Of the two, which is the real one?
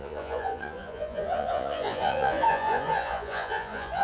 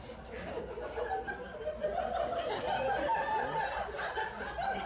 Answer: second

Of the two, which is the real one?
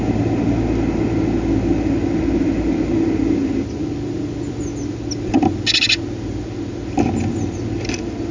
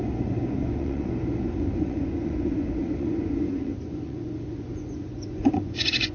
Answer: first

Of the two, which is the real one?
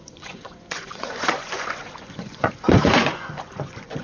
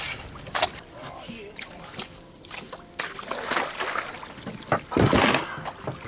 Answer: second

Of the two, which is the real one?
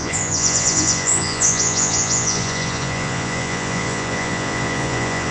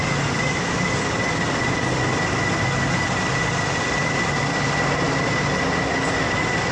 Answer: second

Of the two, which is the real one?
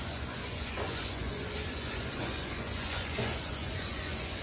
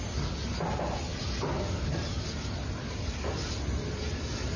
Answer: second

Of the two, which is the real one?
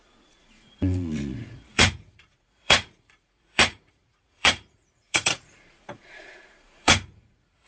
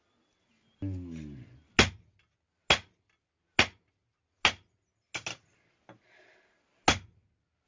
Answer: second